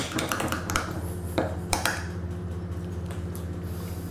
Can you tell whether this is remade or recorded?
recorded